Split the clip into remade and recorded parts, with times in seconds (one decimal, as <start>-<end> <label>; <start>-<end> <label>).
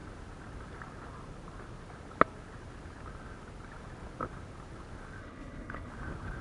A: 0.0-5.2 recorded; 5.2-5.9 remade; 5.9-6.4 recorded